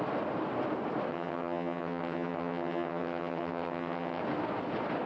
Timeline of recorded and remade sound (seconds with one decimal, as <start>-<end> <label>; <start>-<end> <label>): 0.0-1.1 recorded; 1.1-4.2 remade; 4.2-5.1 recorded